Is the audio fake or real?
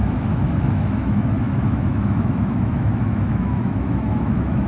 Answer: fake